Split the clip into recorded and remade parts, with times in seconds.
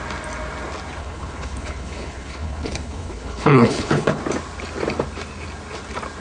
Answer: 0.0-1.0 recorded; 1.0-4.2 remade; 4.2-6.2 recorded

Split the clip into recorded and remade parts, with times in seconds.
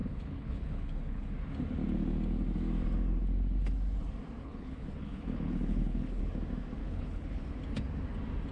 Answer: 0.0-1.3 remade; 1.3-4.4 recorded; 4.4-6.2 remade; 6.2-6.8 recorded; 6.8-7.6 remade; 7.6-8.5 recorded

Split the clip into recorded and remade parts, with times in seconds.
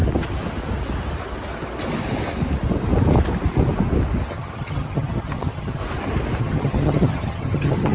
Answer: 0.0-4.3 recorded; 4.3-5.8 remade; 5.8-6.4 recorded; 6.4-7.9 remade